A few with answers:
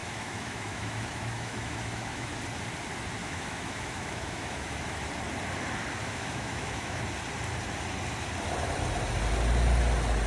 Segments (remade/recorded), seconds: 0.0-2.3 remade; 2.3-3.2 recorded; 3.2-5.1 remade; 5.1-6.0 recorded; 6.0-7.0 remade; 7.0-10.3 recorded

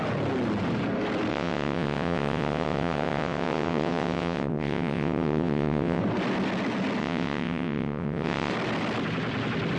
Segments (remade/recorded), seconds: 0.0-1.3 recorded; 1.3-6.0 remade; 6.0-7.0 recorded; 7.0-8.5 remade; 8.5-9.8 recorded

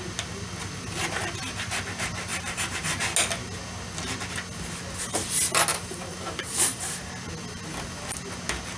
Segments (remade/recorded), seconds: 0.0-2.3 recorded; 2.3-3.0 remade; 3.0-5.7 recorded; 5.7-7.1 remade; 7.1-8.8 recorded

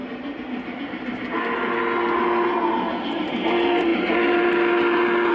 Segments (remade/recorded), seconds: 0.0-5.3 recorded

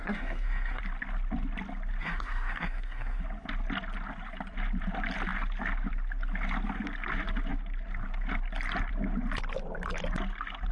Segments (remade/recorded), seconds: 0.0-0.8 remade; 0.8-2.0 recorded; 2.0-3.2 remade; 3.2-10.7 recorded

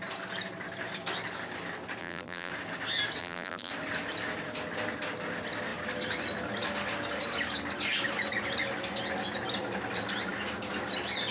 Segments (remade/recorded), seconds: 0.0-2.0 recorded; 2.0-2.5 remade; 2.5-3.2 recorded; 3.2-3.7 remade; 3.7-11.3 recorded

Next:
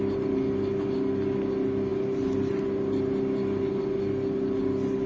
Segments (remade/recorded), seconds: 0.0-5.1 recorded

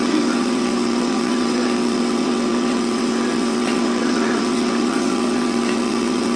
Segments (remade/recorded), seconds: 0.0-6.4 remade